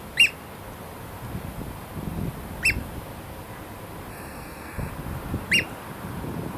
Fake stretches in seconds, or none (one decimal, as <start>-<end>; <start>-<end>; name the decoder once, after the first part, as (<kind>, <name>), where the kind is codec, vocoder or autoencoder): 4.1-4.9 (codec, SNAC)